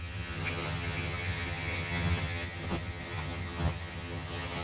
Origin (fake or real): fake